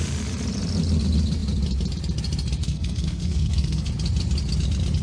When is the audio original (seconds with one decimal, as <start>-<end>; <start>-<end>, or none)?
0.0-2.6; 3.9-5.0